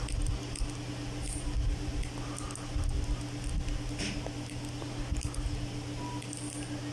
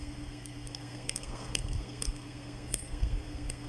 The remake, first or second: second